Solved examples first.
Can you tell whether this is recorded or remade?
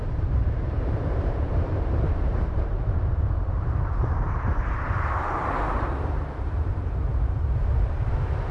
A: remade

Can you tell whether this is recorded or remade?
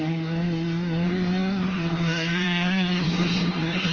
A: remade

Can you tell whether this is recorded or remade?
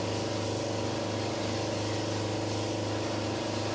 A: recorded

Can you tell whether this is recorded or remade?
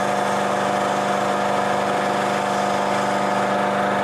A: recorded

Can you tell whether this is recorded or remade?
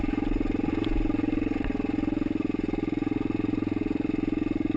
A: recorded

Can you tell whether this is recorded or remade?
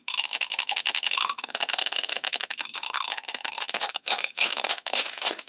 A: remade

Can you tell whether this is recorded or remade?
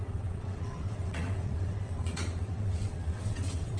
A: remade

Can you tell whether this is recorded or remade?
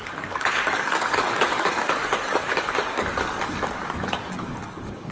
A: remade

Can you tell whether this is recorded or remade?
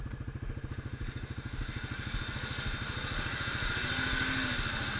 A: recorded